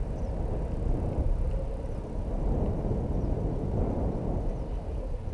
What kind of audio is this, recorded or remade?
recorded